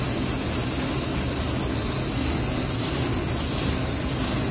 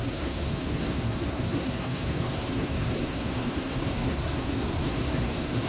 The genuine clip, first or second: first